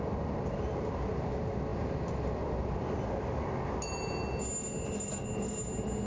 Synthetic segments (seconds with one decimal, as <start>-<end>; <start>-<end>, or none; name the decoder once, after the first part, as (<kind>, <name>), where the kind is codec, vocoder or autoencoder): none